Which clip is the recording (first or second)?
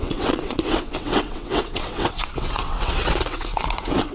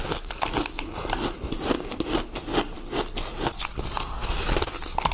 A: second